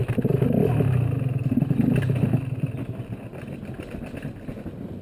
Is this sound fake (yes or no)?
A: no